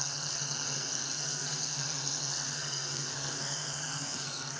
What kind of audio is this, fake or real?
fake